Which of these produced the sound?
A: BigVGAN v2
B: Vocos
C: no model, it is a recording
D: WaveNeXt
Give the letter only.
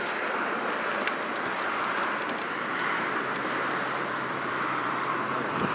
A